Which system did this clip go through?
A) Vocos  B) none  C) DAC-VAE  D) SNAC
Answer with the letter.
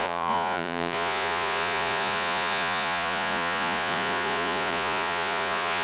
A